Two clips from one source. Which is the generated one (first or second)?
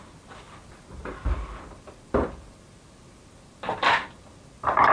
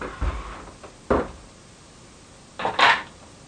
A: first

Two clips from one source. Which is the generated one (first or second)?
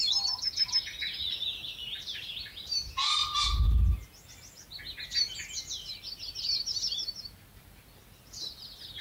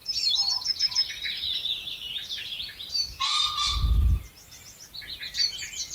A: second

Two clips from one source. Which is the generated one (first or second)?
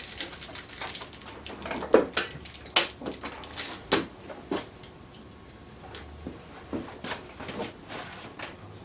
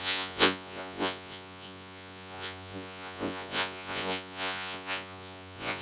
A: second